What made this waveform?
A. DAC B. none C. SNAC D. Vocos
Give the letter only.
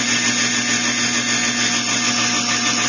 B